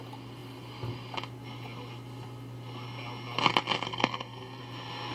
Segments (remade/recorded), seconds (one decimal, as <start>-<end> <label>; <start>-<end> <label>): 0.0-3.9 recorded; 3.9-4.6 remade; 4.6-5.1 recorded